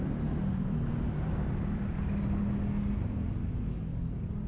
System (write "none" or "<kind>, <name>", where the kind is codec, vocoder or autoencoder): none